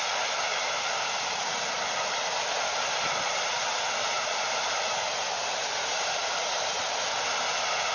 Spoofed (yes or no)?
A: no